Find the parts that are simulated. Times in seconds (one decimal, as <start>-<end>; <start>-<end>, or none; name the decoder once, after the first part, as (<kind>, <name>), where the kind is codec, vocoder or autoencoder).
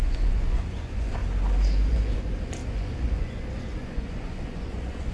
0.0-1.2 (vocoder, Vocos); 1.9-5.1